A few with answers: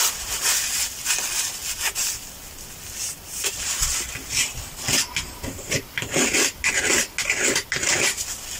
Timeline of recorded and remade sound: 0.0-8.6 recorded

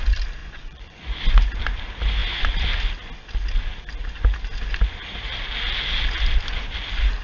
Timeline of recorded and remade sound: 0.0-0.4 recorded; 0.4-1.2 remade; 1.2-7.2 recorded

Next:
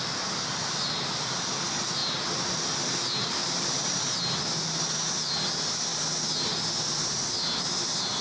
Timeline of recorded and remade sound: 0.0-3.4 recorded; 3.4-4.1 remade; 4.1-8.2 recorded

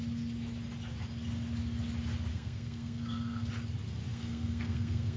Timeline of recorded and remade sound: 0.0-2.3 recorded; 2.3-3.5 remade; 3.5-4.1 recorded; 4.1-5.2 remade

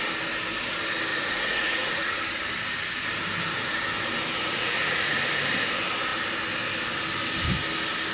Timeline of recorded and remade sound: 0.0-1.1 recorded; 1.1-2.2 remade; 2.2-4.4 recorded; 4.4-5.2 remade; 5.2-8.1 recorded

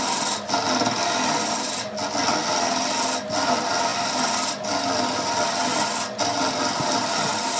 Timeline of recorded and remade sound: 0.0-7.6 recorded

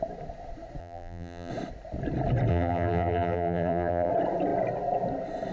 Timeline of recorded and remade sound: 0.0-0.8 recorded; 0.8-1.5 remade; 1.5-2.5 recorded; 2.5-4.1 remade; 4.1-5.5 recorded

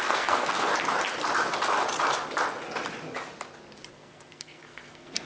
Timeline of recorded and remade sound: 0.0-0.7 remade; 0.7-3.9 recorded; 3.9-5.3 remade